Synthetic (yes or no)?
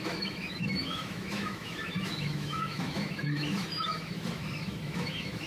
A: yes